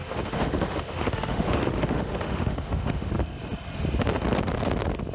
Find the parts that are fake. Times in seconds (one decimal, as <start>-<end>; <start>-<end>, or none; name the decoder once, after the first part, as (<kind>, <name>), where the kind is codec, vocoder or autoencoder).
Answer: 0.0-3.1 (autoencoder, DAC-VAE)